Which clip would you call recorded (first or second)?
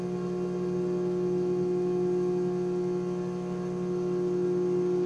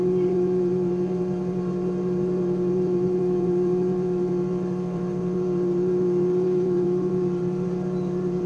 first